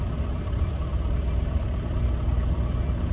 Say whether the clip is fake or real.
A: fake